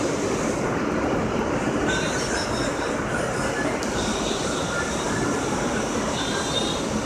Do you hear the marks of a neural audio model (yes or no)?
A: no